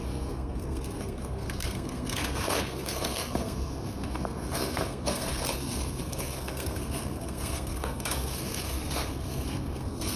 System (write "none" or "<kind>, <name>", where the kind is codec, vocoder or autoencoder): codec, SNAC